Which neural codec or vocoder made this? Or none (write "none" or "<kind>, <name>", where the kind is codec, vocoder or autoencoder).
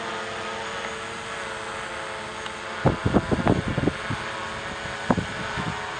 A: none